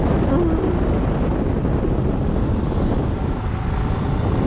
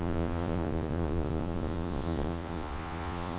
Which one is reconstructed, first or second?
second